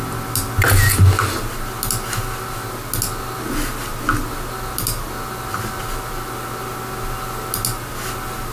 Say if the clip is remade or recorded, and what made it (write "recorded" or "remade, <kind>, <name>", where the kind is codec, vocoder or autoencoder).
recorded